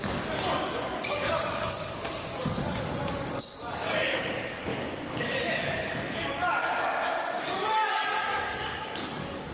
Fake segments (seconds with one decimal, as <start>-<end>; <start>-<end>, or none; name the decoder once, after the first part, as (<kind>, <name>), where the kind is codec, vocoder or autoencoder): 0.0-4.7 (codec, DAC); 5.2-6.6; 7.3-9.5